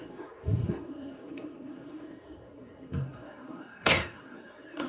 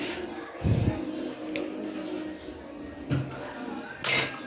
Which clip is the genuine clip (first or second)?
second